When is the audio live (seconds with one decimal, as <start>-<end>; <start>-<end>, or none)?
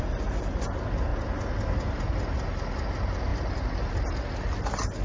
0.0-5.0